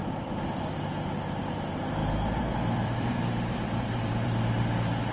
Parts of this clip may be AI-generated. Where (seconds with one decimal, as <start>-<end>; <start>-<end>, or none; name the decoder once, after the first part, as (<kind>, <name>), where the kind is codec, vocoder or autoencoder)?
0.0-0.6 (vocoder, BigVGAN v2); 2.0-5.1